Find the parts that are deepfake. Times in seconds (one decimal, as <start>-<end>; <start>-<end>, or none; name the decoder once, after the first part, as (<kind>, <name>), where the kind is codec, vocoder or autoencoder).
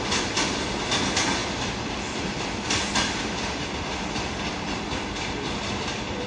1.4-4.5 (vocoder, BigVGAN v2)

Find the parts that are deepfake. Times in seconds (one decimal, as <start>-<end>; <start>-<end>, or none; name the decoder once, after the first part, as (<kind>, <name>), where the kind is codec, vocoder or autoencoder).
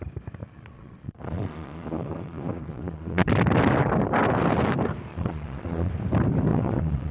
0.4-3.3 (vocoder, Vocos); 5.1-5.9; 6.5-7.1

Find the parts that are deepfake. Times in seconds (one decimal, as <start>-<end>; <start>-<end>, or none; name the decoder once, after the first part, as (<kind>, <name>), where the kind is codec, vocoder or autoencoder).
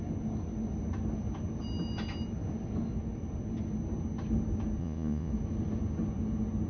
4.8-5.3 (vocoder, Vocos)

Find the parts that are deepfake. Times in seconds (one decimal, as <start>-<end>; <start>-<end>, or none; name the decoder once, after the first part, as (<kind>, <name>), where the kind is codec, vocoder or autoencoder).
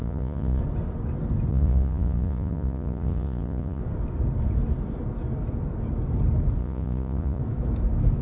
0.0-0.6 (vocoder, Vocos); 1.5-3.8; 6.6-7.4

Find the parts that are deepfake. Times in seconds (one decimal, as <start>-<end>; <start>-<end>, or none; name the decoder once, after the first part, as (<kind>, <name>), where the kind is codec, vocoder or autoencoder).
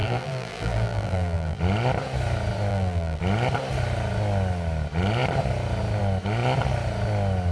0.0-1.6 (vocoder, BigVGAN v2); 2.7-3.2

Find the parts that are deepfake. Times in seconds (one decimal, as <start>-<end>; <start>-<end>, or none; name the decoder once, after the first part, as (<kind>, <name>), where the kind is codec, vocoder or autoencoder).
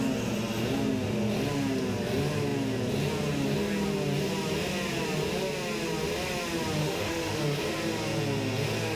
6.8-7.4 (autoencoder, DAC-VAE)